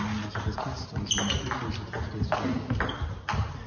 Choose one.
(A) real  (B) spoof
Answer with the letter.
A